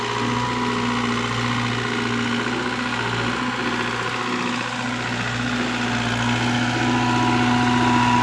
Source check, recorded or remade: recorded